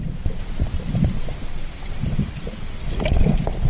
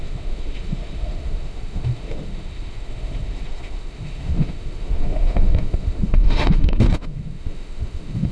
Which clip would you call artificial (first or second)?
second